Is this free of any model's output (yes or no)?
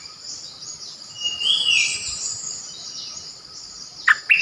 yes